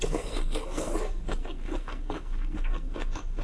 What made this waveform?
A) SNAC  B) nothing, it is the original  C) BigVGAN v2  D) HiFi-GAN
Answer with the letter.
A